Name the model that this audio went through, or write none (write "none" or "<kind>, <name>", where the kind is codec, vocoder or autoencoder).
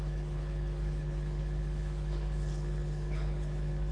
codec, HILCodec